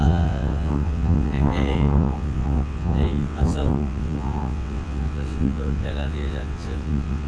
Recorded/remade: remade